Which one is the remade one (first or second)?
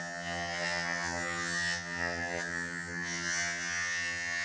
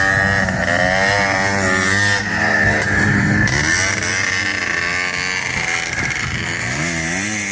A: first